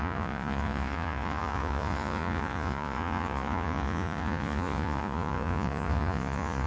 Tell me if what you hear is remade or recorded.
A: remade